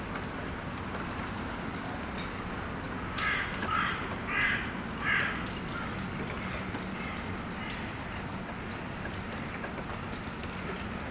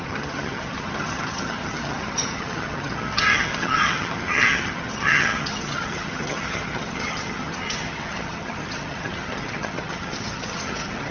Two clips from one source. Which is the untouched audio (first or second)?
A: first